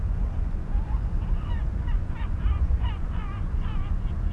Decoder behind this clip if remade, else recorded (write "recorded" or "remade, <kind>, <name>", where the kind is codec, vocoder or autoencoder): remade, vocoder, Vocos